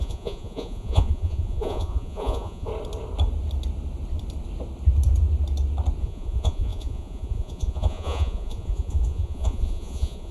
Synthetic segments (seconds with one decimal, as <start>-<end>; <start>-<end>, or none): 0.0-2.7; 6.0-10.3